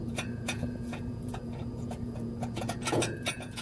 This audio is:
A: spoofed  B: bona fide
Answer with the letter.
A